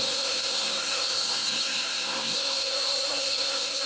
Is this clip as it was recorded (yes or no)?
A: no